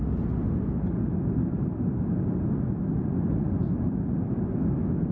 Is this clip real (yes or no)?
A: yes